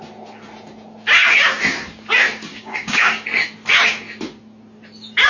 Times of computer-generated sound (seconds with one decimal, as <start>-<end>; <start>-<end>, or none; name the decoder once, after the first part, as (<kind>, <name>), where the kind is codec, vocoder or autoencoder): 2.5-3.1 (codec, DAC)